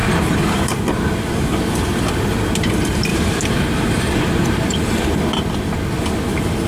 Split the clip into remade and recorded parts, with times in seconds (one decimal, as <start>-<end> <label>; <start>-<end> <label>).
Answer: 0.0-0.7 remade; 0.7-3.1 recorded; 3.1-4.9 remade; 4.9-6.7 recorded